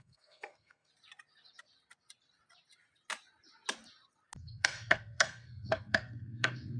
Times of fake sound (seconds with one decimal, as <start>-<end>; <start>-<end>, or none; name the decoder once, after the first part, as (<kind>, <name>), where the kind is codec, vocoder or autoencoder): 0.0-0.9 (codec, SNAC); 4.4-6.8